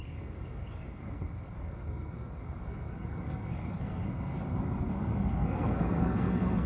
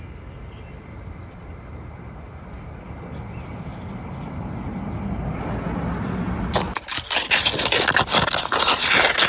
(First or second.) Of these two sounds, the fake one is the first